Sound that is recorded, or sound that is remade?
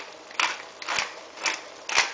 recorded